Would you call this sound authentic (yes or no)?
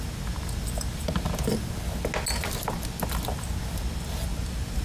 yes